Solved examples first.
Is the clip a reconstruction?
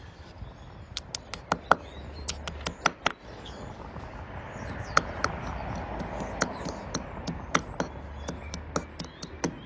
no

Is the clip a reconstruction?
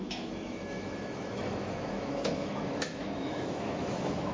yes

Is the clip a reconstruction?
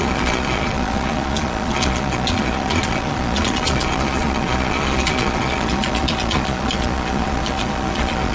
yes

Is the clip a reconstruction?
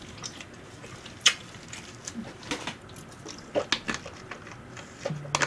no